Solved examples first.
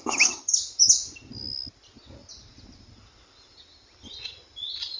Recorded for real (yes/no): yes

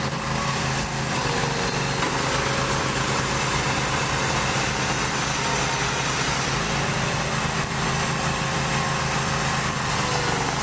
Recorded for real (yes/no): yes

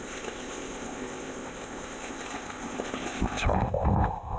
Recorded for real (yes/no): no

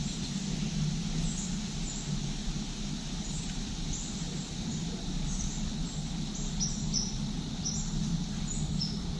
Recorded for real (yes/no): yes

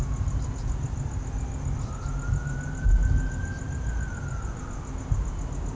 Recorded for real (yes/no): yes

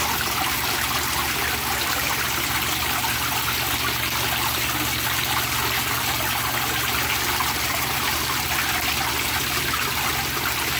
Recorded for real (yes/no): yes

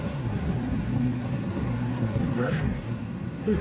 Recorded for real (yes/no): no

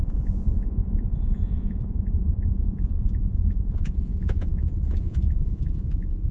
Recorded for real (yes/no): no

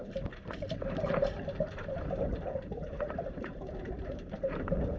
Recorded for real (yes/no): no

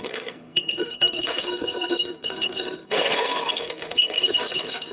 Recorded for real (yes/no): no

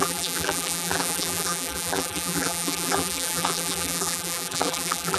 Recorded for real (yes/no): no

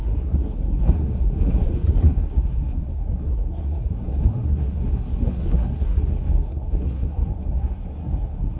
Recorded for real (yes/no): no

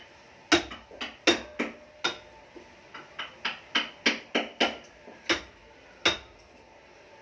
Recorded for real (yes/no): yes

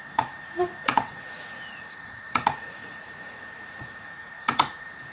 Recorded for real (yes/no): no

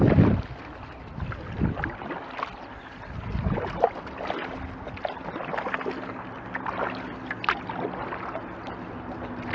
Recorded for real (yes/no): yes